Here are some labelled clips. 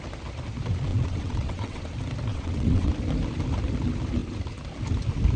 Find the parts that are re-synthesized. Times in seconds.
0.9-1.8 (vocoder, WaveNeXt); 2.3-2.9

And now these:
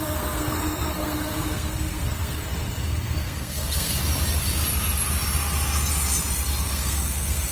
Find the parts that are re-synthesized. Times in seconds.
0.0-4.0 (codec, SNAC); 6.6-7.5